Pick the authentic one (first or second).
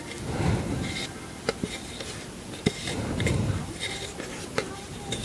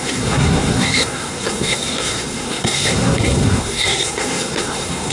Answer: first